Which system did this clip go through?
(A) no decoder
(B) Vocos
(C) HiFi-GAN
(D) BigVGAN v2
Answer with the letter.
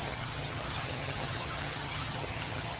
C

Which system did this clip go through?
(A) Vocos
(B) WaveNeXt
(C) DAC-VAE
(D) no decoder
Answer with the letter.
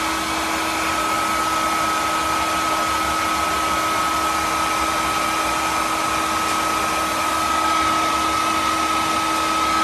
D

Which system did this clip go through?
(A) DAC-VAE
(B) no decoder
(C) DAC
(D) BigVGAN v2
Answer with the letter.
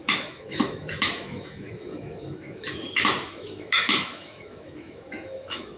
A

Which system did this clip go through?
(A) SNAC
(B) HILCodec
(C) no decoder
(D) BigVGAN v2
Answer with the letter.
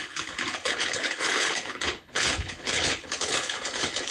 B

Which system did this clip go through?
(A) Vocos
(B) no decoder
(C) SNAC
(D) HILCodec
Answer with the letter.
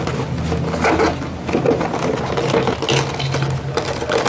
B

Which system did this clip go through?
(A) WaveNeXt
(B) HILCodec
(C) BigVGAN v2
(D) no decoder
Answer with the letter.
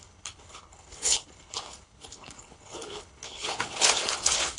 B